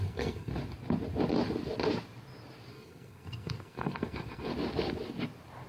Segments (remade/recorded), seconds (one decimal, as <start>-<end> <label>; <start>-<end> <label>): 0.0-0.5 remade; 0.5-2.7 recorded; 2.7-4.5 remade; 4.5-5.7 recorded